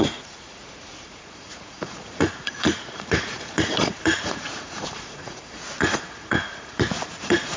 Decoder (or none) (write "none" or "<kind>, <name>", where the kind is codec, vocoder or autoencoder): vocoder, Vocos